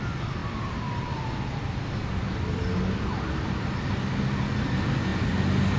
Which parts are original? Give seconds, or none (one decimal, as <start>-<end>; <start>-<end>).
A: 0.0-5.8